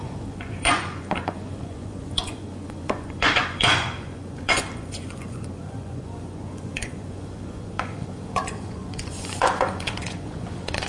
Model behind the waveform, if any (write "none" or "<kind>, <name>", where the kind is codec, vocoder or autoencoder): vocoder, Vocos